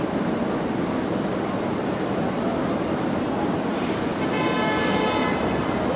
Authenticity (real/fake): real